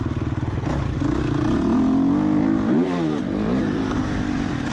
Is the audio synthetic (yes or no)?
no